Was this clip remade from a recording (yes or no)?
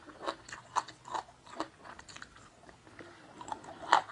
no